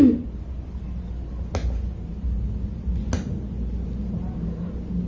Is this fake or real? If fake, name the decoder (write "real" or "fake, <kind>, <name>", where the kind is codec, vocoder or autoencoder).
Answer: real